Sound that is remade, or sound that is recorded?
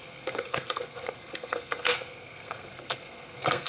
remade